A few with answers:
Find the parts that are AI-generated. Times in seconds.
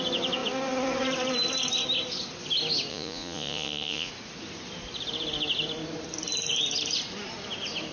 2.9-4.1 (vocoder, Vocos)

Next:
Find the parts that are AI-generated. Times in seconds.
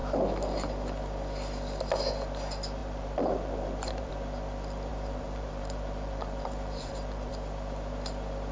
2.8-4.1 (vocoder, BigVGAN v2); 4.9-7.3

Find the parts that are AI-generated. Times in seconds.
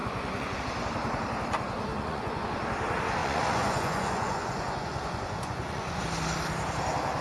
0.0-0.6 (vocoder, Vocos); 1.9-2.5; 3.2-6.0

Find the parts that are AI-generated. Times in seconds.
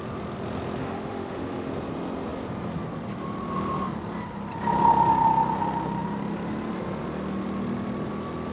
0.8-1.7 (autoencoder, DAC-VAE)